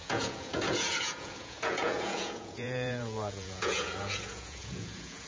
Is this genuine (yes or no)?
no